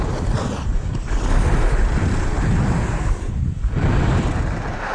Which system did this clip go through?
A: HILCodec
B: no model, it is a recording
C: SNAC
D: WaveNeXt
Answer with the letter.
B